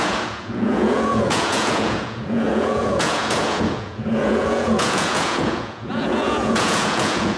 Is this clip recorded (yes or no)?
no